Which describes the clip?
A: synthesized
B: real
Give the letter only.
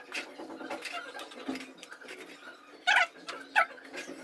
B